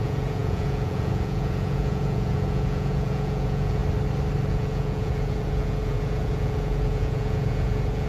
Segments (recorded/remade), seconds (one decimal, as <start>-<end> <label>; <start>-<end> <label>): 0.0-3.8 remade; 3.8-4.5 recorded; 4.5-8.1 remade